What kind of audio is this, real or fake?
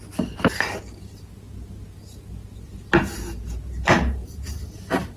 real